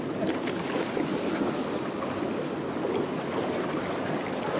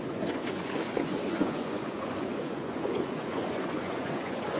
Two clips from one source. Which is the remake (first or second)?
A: second